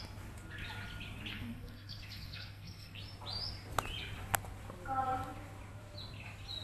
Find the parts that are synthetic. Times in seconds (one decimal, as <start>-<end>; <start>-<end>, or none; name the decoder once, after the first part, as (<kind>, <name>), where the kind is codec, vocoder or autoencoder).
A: 1.3-3.0 (codec, SNAC)